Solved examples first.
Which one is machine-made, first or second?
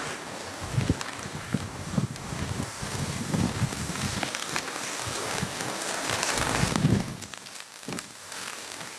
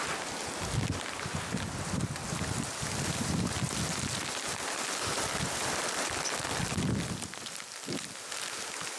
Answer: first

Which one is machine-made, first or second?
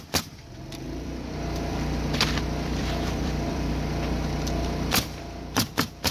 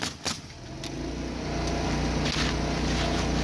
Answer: first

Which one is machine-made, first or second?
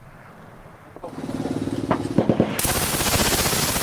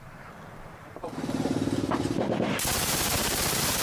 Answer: second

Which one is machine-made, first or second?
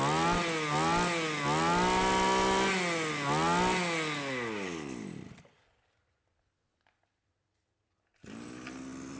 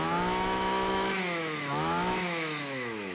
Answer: second